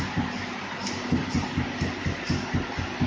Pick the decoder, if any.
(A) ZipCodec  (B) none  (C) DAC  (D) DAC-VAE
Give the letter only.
B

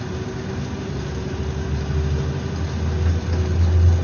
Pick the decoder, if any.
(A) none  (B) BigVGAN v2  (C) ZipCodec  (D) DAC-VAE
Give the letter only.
A